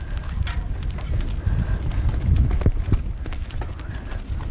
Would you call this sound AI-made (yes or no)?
no